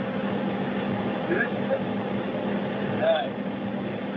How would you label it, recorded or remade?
recorded